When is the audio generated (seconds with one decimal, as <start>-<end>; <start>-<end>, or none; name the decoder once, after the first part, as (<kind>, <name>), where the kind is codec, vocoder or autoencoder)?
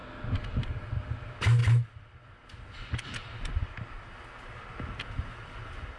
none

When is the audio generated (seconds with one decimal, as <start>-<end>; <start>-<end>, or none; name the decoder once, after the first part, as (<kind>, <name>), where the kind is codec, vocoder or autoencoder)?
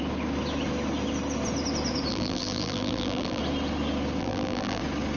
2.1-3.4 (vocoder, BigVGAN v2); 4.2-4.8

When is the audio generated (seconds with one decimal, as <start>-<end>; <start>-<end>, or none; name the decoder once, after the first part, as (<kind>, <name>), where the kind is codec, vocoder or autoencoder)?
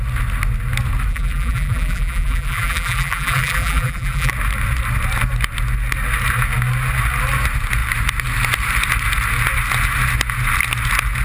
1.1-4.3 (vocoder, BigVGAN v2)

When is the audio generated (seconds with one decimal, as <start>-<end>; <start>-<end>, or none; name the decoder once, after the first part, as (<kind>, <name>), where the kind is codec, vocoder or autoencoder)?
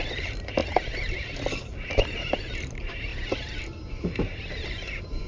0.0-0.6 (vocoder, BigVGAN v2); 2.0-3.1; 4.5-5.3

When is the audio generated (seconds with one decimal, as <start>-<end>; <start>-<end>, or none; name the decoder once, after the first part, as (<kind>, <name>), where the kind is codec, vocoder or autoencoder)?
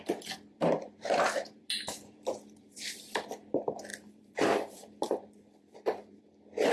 0.5-3.0 (vocoder, BigVGAN v2); 3.9-6.2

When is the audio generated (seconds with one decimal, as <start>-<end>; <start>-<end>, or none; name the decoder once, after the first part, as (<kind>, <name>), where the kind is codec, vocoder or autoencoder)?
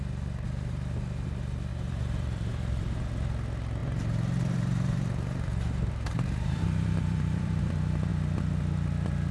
1.7-3.1 (vocoder, BigVGAN v2); 3.8-7.7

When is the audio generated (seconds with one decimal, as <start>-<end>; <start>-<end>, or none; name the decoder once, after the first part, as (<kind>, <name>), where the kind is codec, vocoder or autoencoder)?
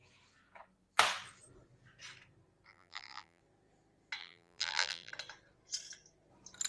2.7-3.4 (vocoder, BigVGAN v2); 4.2-5.1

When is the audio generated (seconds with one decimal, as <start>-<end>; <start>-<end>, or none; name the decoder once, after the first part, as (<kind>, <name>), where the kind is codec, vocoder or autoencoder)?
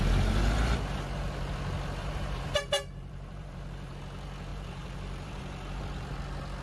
2.0-4.0 (vocoder, BigVGAN v2); 4.5-5.8